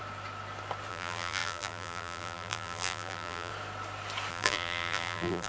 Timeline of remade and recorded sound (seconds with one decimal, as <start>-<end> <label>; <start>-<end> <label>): 0.0-0.9 recorded; 0.9-3.5 remade; 3.5-4.3 recorded; 4.3-5.5 remade